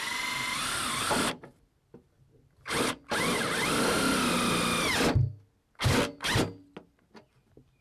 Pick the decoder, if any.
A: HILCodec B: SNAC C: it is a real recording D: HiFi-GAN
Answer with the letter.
C